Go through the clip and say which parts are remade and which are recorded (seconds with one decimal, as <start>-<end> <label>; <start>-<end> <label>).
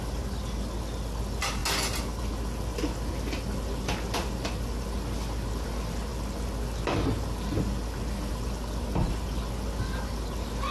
0.0-10.7 recorded